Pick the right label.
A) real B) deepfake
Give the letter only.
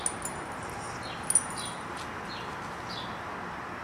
A